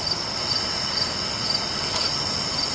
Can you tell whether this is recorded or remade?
recorded